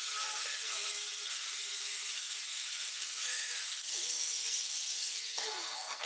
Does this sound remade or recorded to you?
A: remade